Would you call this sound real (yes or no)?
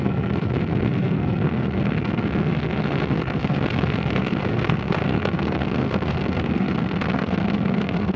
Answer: no